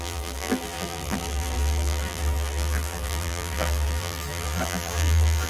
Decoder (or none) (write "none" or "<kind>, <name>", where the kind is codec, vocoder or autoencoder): vocoder, BigVGAN v2